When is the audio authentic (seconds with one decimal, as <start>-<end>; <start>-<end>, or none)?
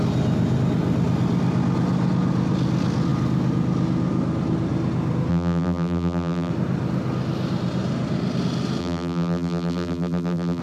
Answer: 0.0-5.3; 6.5-8.8